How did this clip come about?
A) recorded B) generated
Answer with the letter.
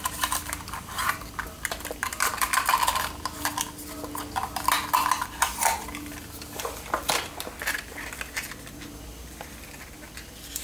A